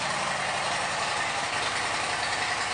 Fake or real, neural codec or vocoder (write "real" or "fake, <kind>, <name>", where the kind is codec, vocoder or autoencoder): real